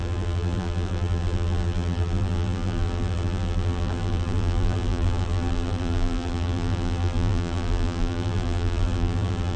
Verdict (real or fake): fake